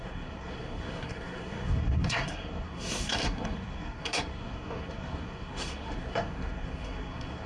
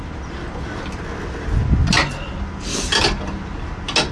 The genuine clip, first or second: second